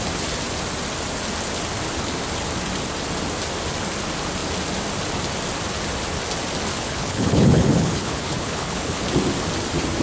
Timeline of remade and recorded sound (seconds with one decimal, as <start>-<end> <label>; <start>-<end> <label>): 0.0-6.7 recorded; 6.7-9.0 remade; 9.0-10.0 recorded